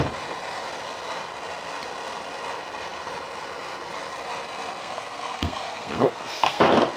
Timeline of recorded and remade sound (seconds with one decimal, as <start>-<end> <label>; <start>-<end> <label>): 0.0-4.8 recorded; 4.8-6.6 remade; 6.6-7.0 recorded